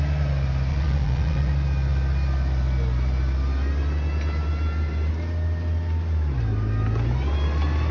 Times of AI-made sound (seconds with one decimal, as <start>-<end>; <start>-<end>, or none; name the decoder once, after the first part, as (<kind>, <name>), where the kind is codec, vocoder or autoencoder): 0.7-1.5 (vocoder, Vocos)